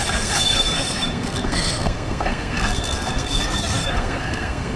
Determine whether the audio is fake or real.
fake